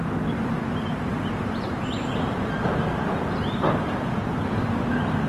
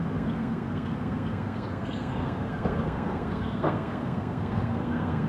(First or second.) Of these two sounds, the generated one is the second